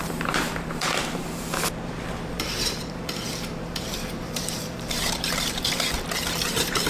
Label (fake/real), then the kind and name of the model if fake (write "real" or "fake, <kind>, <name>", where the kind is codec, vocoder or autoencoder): fake, vocoder, BigVGAN v2